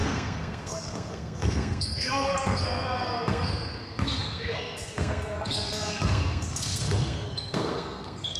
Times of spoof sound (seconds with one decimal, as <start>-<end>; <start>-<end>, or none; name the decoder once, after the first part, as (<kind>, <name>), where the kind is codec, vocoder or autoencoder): 0.0-8.4 (codec, SNAC)